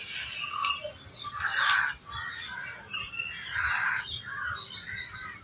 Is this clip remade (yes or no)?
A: no